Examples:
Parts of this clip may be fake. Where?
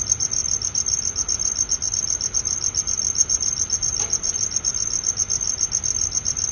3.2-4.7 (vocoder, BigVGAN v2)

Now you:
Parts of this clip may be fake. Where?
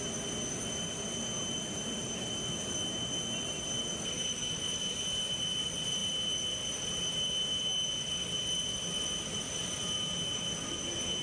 none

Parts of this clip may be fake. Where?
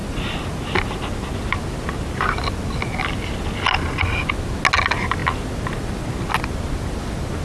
none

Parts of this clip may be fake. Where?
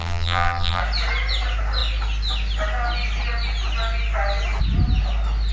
0.0-0.8 (vocoder, BigVGAN v2)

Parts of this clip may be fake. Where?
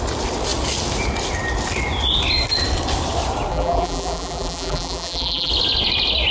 3.5-5.5 (vocoder, BigVGAN v2)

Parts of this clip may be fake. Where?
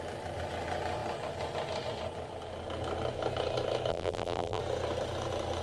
3.9-4.6 (vocoder, BigVGAN v2)